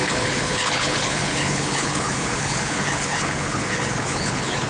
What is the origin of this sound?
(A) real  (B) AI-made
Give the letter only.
B